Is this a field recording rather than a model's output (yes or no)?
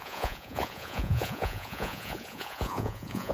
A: no